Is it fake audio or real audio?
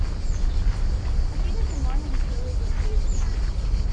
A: real